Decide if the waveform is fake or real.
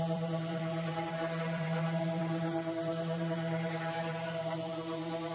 fake